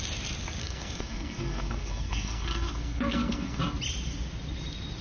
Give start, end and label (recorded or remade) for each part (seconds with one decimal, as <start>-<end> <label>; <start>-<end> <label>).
0.0-0.6 recorded; 0.6-3.6 remade; 3.6-5.0 recorded